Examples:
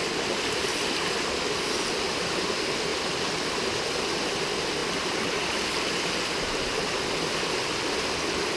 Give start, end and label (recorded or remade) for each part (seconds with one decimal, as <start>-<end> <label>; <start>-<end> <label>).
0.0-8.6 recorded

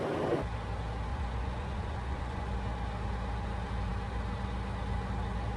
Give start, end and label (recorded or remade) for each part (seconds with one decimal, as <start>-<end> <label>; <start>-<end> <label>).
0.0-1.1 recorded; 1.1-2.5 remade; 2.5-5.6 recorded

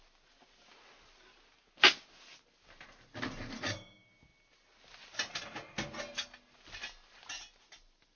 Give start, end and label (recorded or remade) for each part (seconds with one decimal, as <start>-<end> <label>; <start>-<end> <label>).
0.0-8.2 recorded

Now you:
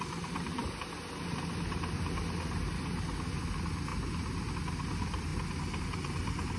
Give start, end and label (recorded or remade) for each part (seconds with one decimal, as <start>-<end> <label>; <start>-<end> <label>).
0.0-6.6 recorded

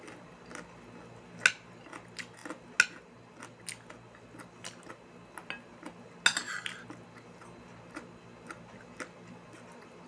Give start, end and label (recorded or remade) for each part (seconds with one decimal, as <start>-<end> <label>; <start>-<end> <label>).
0.0-10.1 recorded

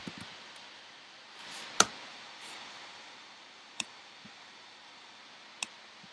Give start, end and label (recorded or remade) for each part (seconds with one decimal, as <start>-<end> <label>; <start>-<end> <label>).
0.0-2.1 recorded; 2.1-5.2 remade; 5.2-6.1 recorded

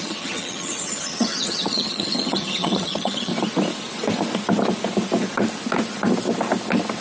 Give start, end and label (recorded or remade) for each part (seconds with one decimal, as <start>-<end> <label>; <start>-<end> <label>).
0.0-3.3 remade; 3.3-7.0 recorded